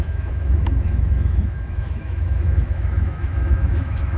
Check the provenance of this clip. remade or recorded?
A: remade